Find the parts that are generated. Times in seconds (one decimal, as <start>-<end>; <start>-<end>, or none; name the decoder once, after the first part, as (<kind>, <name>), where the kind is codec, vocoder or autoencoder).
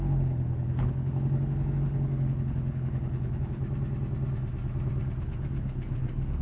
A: 0.0-3.6 (codec, HILCodec); 5.2-6.4